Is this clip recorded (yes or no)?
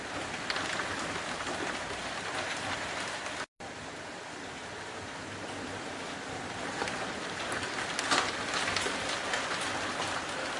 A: yes